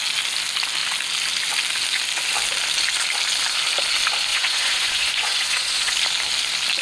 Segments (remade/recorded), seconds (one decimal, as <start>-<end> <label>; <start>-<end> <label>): 0.0-4.3 recorded; 4.3-5.9 remade; 5.9-6.8 recorded